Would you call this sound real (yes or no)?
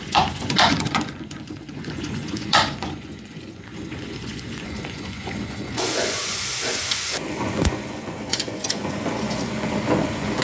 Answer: no